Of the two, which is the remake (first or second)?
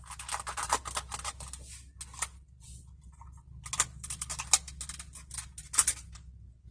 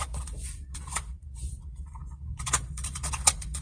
second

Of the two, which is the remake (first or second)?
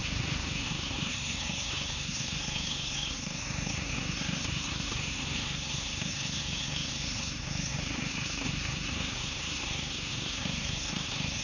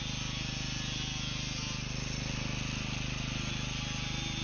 first